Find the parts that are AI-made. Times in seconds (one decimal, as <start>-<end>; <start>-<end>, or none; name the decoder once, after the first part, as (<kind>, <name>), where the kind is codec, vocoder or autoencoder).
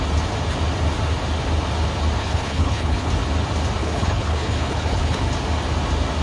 2.2-3.1 (codec, HILCodec); 3.8-5.2